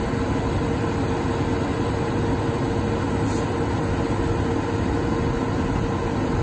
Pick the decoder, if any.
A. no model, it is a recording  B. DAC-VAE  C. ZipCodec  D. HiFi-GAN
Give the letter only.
A